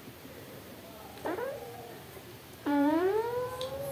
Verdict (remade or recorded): remade